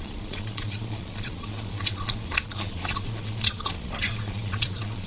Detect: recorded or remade remade